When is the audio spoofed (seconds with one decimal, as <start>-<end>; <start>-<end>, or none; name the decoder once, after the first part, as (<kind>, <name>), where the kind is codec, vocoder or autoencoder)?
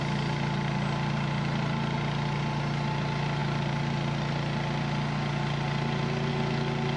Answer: none